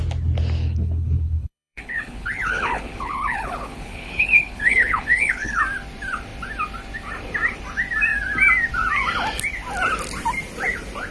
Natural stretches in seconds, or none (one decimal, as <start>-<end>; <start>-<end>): 0.0-0.6; 5.6-11.1